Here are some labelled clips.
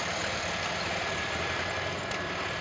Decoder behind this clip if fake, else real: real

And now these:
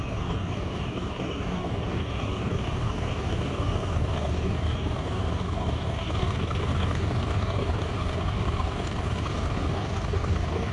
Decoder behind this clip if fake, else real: fake, codec, DAC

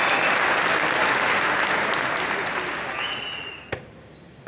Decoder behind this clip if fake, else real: real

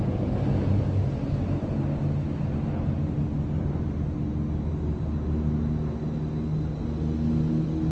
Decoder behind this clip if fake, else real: real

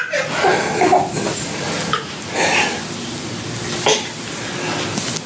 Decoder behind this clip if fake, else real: real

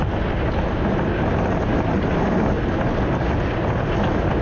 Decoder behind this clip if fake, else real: real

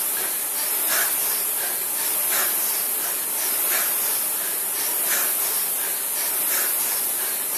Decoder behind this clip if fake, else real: real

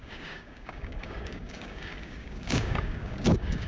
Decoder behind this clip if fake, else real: fake, codec, DAC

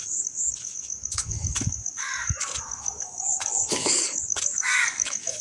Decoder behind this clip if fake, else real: fake, codec, DAC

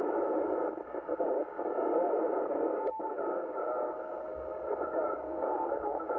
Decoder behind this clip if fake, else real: fake, codec, DAC